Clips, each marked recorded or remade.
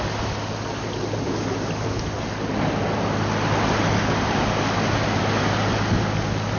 recorded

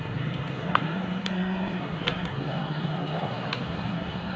remade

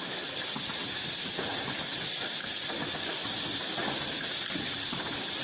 remade